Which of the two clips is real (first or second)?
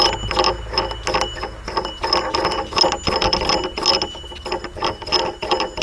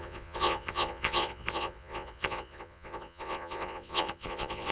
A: first